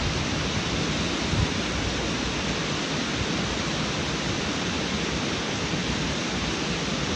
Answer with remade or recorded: recorded